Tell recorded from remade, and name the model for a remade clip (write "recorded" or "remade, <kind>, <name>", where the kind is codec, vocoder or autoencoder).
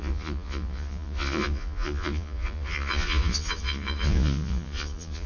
remade, vocoder, Vocos